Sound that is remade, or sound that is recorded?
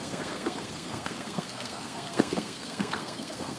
remade